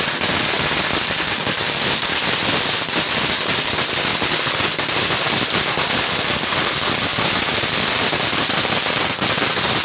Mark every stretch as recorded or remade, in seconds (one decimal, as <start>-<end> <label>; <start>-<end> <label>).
0.0-9.8 recorded